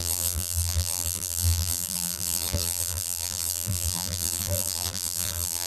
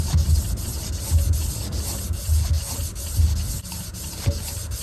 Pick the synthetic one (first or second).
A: first